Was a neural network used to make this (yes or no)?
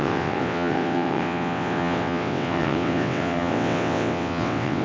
yes